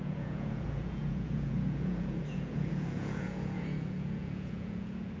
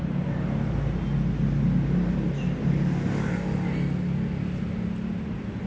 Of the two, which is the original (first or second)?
second